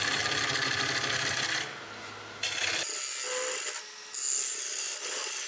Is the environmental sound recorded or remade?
recorded